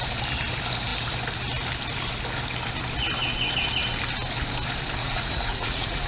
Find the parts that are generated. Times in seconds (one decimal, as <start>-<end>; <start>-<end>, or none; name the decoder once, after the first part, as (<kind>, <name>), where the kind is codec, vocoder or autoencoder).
5.0-6.1 (vocoder, Vocos)

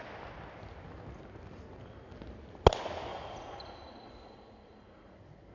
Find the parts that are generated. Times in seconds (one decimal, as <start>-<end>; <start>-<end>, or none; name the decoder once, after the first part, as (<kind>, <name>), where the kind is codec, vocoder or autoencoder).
3.1-5.1 (vocoder, Vocos)

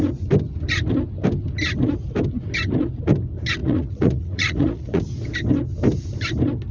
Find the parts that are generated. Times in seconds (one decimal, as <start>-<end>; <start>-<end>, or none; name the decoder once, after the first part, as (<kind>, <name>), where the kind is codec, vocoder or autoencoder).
3.6-5.0 (vocoder, Vocos)

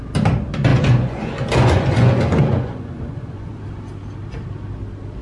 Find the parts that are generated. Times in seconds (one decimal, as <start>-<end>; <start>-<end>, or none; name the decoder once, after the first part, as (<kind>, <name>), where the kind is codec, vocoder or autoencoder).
0.7-3.6 (vocoder, Vocos)

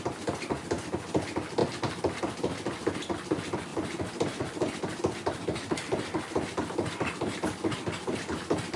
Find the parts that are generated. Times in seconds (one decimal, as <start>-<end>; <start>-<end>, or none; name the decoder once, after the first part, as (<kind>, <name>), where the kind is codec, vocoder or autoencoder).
none